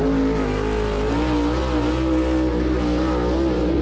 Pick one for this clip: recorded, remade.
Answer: recorded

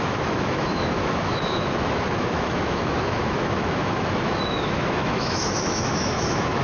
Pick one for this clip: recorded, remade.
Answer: remade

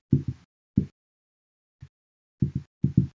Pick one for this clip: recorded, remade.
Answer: recorded